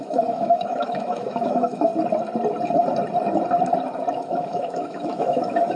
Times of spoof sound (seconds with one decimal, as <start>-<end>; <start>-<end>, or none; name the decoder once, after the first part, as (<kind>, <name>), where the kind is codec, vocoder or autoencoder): 0.0-1.9 (autoencoder, DAC-VAE); 4.1-5.8